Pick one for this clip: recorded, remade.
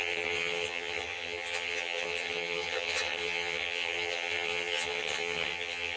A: remade